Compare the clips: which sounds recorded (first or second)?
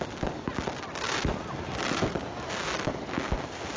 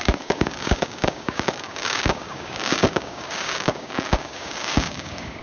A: first